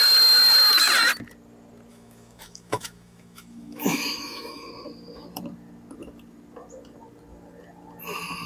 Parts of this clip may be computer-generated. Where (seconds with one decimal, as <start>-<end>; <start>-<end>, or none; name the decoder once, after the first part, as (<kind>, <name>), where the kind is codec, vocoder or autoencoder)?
1.9-4.7 (autoencoder, DAC-VAE)